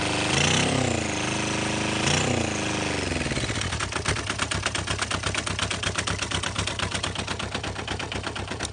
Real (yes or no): yes